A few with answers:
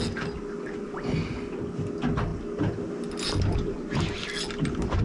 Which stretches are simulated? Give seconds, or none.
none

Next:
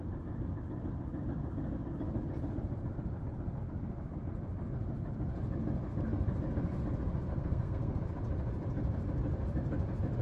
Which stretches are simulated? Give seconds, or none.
7.3-8.0 (codec, SNAC)